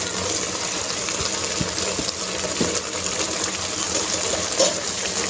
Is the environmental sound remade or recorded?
recorded